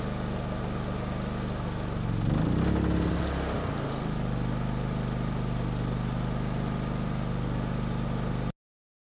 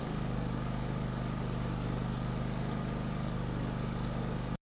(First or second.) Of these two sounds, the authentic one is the first